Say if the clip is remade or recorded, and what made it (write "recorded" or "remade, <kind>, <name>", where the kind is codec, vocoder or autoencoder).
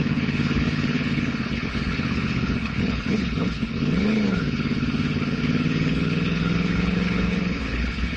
remade, codec, HILCodec